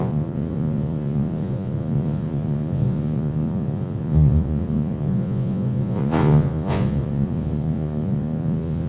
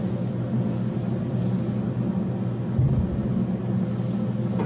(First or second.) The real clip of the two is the second